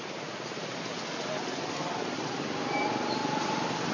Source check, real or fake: real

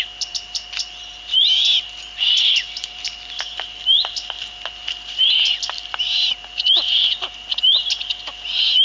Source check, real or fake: fake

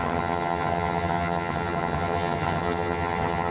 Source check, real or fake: fake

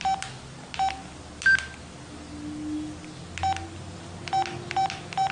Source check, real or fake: real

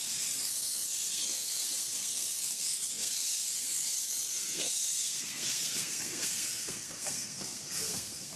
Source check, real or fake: fake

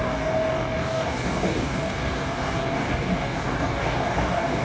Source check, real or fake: fake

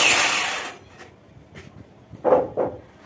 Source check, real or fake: real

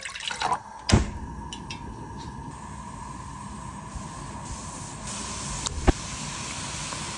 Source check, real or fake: real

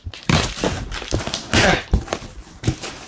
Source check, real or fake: fake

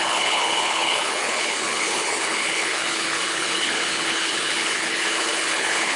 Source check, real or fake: fake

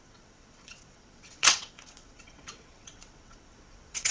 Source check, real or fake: fake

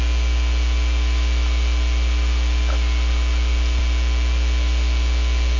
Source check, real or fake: real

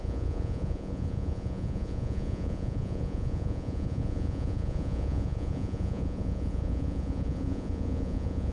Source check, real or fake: fake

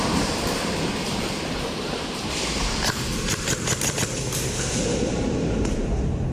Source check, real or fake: fake